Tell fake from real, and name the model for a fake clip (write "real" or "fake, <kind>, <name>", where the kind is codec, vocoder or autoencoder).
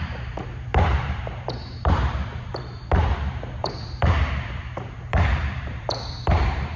fake, vocoder, BigVGAN v2